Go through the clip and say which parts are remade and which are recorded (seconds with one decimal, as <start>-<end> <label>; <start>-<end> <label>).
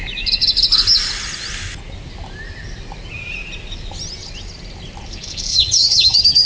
0.0-5.5 recorded; 5.5-6.5 remade